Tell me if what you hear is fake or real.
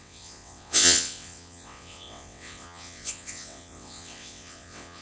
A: fake